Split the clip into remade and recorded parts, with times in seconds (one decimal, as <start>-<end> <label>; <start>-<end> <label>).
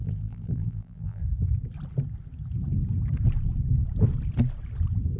0.0-1.2 remade; 1.2-5.2 recorded